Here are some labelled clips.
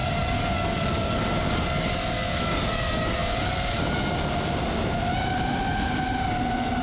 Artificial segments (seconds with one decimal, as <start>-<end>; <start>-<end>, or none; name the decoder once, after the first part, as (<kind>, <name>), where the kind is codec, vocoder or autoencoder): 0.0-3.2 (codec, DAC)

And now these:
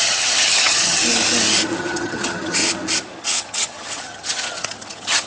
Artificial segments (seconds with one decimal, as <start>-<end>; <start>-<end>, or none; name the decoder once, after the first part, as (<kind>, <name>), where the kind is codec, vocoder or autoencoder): 0.0-1.0 (vocoder, HiFi-GAN); 1.8-2.6; 3.2-5.3

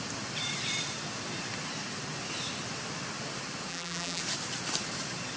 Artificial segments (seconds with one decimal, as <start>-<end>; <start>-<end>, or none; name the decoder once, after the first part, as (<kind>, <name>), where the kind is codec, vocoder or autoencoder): 3.7-4.2 (vocoder, BigVGAN v2)

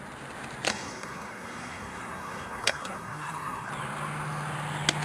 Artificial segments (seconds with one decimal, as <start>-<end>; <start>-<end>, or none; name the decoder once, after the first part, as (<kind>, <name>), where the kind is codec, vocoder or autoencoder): 0.7-3.7 (codec, SNAC)

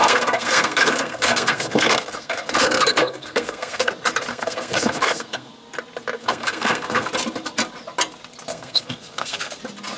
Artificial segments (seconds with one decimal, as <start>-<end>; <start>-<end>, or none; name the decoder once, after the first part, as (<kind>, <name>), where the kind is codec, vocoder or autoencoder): 0.0-3.9 (codec, SNAC); 4.3-5.5; 6.2-7.1; 8.5-9.6